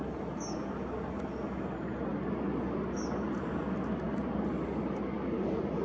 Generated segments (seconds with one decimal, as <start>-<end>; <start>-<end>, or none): none